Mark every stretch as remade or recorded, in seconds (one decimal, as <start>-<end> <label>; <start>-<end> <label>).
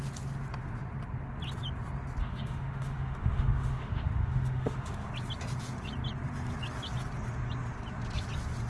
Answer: 0.0-2.2 recorded; 2.2-5.1 remade; 5.1-8.7 recorded